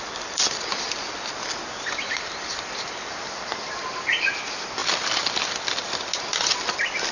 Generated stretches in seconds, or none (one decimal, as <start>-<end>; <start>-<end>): 0.0-4.8; 6.2-7.1